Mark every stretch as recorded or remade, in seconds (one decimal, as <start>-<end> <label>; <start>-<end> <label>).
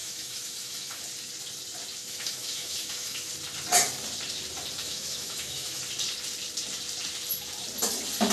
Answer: 0.0-1.0 remade; 1.0-2.0 recorded; 2.0-3.3 remade; 3.3-4.8 recorded; 4.8-5.8 remade; 5.8-8.3 recorded